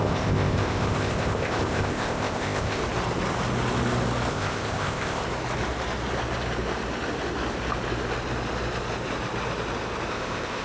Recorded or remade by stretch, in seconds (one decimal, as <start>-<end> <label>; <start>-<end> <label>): 0.0-2.8 remade; 2.8-4.3 recorded; 4.3-5.2 remade; 5.2-10.1 recorded; 10.1-10.6 remade